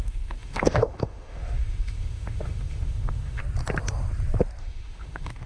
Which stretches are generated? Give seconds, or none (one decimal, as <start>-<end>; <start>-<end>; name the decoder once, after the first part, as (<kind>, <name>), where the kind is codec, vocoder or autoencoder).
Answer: 0.0-3.4 (autoencoder, DAC-VAE); 4.6-5.5